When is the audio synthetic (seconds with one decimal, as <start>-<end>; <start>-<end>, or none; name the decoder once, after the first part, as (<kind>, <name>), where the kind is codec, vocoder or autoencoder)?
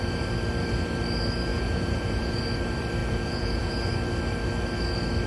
1.5-2.4 (vocoder, Vocos); 3.0-3.7